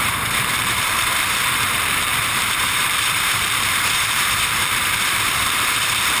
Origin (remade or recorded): remade